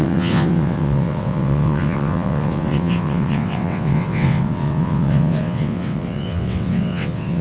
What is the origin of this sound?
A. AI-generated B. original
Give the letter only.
A